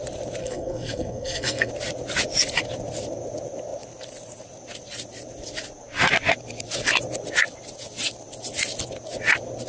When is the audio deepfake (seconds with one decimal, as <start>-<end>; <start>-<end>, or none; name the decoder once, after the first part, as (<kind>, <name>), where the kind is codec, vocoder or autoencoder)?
0.4-1.7 (codec, SNAC)